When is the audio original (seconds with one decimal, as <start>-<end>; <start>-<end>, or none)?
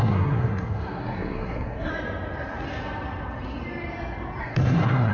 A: 1.9-4.4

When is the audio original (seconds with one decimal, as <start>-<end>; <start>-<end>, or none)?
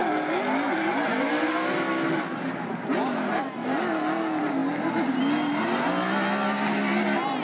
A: 0.0-7.4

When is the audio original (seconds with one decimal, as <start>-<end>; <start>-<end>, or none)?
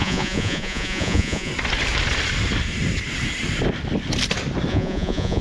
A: 1.5-4.7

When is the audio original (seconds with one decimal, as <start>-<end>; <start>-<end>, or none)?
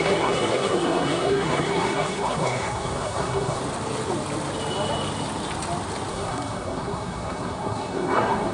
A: 3.6-6.1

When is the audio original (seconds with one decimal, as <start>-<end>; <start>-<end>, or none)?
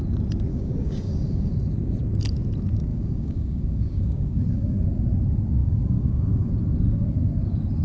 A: 0.0-0.5; 1.5-2.9; 4.8-5.6; 6.5-7.8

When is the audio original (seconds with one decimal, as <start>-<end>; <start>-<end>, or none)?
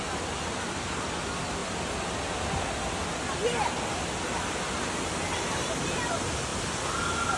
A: 0.0-7.4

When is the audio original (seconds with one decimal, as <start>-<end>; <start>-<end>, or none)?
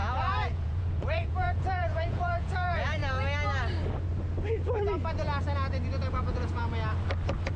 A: 3.0-6.1; 6.6-7.6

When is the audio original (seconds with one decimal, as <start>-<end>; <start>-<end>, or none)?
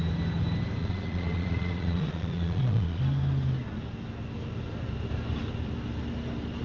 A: 0.0-0.8; 3.0-6.6